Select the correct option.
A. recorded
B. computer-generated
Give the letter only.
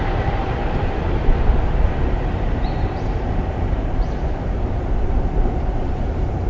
B